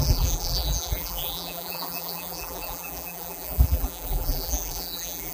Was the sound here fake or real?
fake